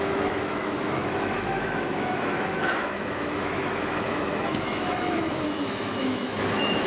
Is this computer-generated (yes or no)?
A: yes